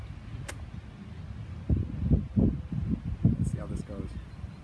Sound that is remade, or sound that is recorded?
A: recorded